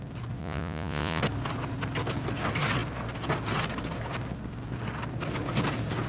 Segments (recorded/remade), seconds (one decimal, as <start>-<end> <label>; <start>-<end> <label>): 0.0-0.4 recorded; 0.4-1.2 remade; 1.2-6.1 recorded